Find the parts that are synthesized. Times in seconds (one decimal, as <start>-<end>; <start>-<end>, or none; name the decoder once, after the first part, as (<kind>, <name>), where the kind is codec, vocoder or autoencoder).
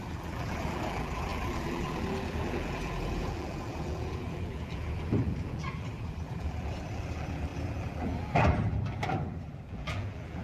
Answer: 0.0-10.4 (vocoder, BigVGAN v2)